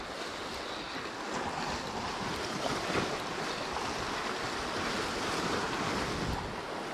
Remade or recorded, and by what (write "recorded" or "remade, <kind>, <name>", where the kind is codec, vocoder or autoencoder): recorded